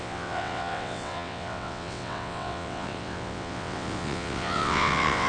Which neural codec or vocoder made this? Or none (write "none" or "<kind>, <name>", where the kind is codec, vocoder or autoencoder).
vocoder, WaveNeXt